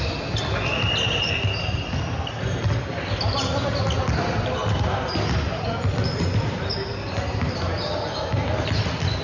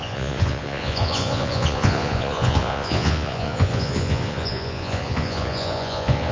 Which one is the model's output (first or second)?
second